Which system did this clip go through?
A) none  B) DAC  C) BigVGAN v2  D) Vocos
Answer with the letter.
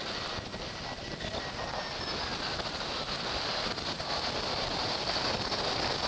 A